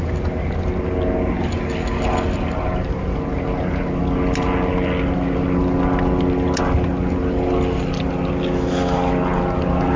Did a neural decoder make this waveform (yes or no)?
no